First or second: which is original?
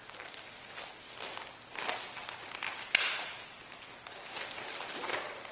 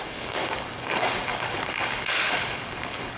first